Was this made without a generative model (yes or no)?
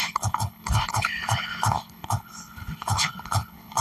no